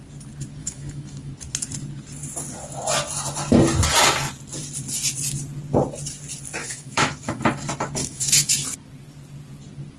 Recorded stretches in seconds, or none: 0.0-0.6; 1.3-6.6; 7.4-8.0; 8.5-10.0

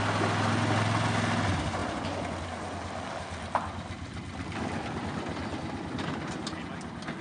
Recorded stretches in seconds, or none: 0.0-7.2

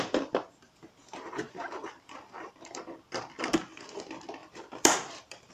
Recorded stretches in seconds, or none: 0.0-0.5; 3.3-4.4